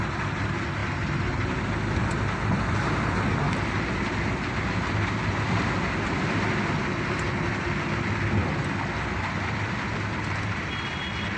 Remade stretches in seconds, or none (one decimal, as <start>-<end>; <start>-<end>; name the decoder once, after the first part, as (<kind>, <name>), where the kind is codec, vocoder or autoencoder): none